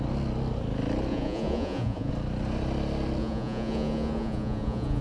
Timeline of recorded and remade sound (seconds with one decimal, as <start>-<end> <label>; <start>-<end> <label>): 0.0-1.1 recorded; 1.1-2.1 remade; 2.1-3.2 recorded; 3.2-5.0 remade